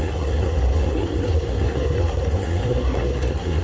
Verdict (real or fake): fake